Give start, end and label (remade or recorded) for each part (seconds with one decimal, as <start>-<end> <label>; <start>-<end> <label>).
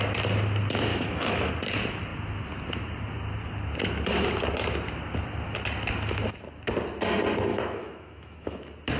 0.0-0.9 recorded; 0.9-1.5 remade; 1.5-7.5 recorded; 7.5-8.6 remade; 8.6-9.0 recorded